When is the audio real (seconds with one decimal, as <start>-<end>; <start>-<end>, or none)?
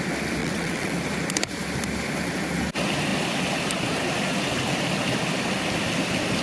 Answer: 0.0-0.4; 0.9-6.4